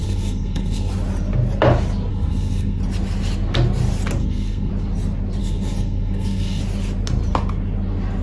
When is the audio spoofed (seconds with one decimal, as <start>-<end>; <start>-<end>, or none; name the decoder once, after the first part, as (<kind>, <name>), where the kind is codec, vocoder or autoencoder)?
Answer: 0.0-0.9 (codec, SNAC); 2.1-2.8; 4.2-4.7; 5.4-6.6